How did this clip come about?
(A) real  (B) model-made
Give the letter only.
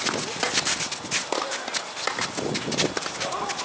A